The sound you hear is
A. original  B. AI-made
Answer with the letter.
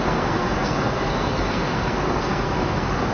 B